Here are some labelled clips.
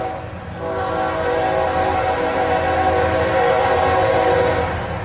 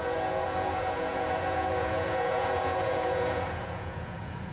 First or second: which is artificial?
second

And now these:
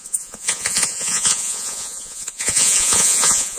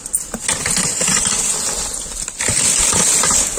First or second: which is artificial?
first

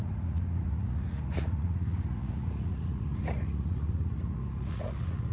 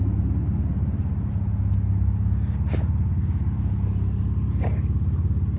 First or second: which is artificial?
first